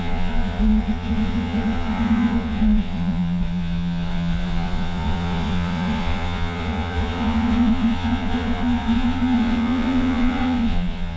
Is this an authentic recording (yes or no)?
no